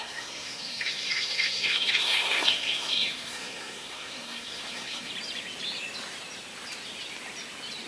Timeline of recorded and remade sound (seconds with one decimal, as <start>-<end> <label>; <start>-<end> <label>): 0.0-5.1 remade; 5.1-7.9 recorded